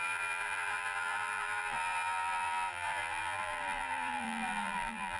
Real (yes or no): no